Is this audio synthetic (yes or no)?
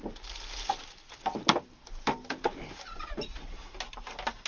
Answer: no